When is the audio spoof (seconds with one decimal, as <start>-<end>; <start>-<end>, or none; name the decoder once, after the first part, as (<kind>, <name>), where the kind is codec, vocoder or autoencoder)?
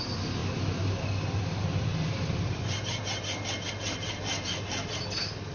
none